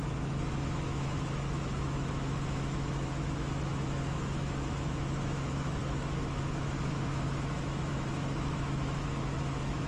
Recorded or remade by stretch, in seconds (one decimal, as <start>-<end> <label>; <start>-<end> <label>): 0.0-9.9 remade